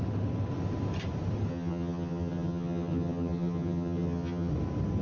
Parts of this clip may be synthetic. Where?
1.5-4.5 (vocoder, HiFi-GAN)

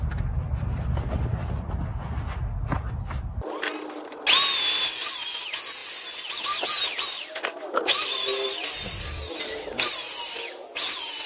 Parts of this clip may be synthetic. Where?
none

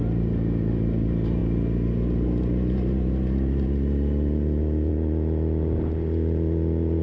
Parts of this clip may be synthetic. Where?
none

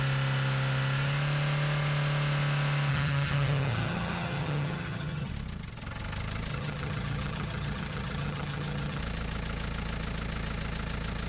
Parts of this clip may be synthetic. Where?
2.9-5.3 (vocoder, HiFi-GAN); 6.5-9.0

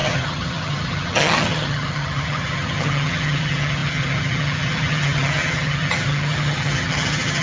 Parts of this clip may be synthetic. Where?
0.0-7.4 (vocoder, HiFi-GAN)

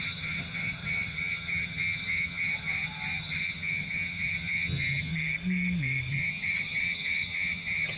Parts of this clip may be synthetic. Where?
0.0-5.1 (vocoder, HiFi-GAN); 6.1-8.0

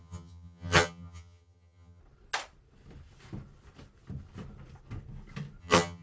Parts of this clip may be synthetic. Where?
0.0-2.0 (vocoder, HiFi-GAN); 5.6-6.0